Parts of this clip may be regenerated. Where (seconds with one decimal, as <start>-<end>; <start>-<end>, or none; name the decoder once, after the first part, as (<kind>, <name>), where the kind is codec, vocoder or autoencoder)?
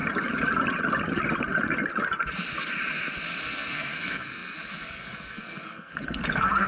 3.4-6.7 (codec, SNAC)